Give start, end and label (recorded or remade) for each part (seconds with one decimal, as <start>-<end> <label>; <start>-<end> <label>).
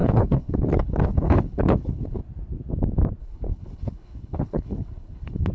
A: 0.0-2.2 remade; 2.2-3.2 recorded; 3.2-5.5 remade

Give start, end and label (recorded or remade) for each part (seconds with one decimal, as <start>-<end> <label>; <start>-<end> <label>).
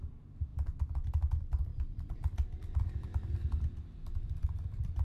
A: 0.0-5.0 remade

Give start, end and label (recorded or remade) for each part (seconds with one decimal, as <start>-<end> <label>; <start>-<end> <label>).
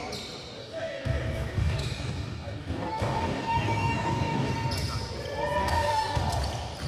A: 0.0-0.6 recorded; 0.6-4.5 remade; 4.5-5.6 recorded; 5.6-6.2 remade; 6.2-6.9 recorded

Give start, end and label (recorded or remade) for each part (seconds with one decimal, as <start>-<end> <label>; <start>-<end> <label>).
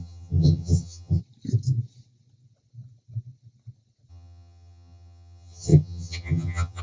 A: 0.0-1.2 remade; 1.2-4.1 recorded; 4.1-6.8 remade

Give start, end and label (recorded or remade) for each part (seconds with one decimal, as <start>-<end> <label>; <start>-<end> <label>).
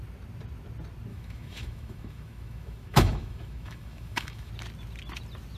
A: 0.0-1.1 recorded; 1.1-4.5 remade; 4.5-5.6 recorded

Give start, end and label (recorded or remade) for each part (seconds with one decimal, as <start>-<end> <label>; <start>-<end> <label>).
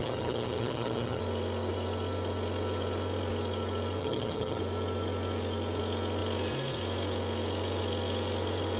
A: 0.0-1.2 remade; 1.2-4.0 recorded; 4.0-4.6 remade; 4.6-8.8 recorded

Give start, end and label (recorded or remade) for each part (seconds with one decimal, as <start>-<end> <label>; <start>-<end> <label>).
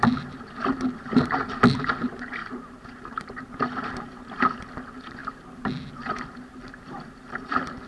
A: 0.0-7.9 remade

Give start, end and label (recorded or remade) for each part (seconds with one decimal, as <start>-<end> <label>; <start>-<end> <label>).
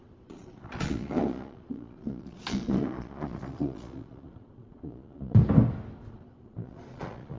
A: 0.0-5.4 remade; 5.4-6.1 recorded; 6.1-7.4 remade